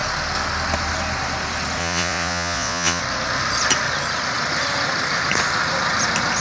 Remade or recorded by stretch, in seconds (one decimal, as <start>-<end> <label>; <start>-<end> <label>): 0.0-1.8 recorded; 1.8-3.0 remade; 3.0-6.4 recorded